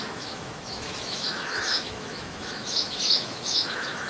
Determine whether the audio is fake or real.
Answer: fake